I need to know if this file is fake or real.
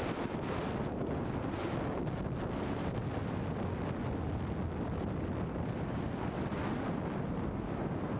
real